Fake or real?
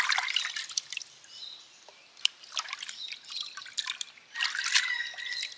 real